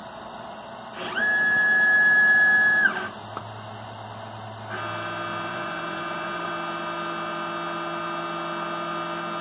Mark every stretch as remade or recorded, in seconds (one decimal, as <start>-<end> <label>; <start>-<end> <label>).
0.0-5.5 recorded; 5.5-6.5 remade; 6.5-9.4 recorded